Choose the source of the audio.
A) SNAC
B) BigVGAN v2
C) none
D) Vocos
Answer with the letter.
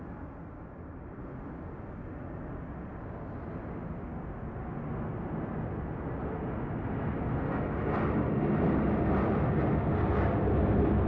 C